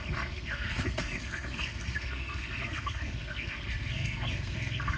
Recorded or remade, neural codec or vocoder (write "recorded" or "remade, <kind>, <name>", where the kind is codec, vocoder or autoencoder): remade, codec, SNAC